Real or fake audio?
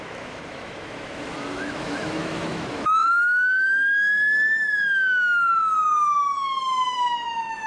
fake